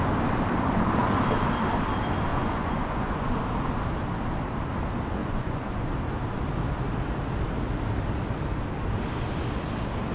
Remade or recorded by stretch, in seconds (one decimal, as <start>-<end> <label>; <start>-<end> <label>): 0.0-2.3 recorded; 2.3-3.4 remade; 3.4-5.2 recorded; 5.2-5.9 remade; 5.9-10.1 recorded